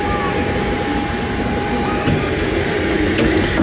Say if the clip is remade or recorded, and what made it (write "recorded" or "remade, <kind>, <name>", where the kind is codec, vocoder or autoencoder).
recorded